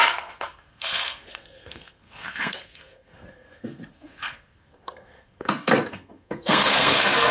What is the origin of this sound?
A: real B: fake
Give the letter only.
B